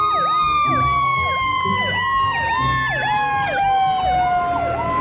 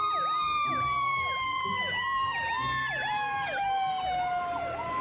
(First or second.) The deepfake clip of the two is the second